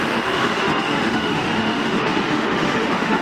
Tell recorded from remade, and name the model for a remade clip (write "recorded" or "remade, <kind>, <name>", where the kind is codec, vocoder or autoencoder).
remade, autoencoder, DAC-VAE